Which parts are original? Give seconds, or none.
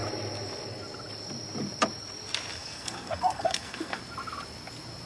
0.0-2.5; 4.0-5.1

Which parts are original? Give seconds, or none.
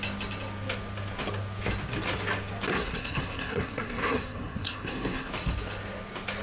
0.0-2.7; 5.3-6.4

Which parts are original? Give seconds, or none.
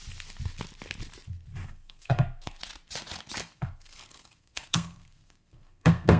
0.0-1.6; 2.6-3.4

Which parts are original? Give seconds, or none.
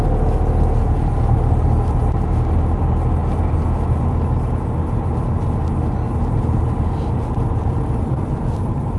0.0-9.0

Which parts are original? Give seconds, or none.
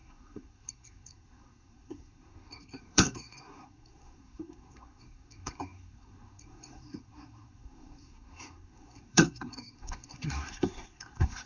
none